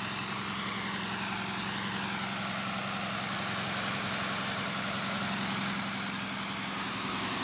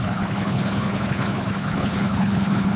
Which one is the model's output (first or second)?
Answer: second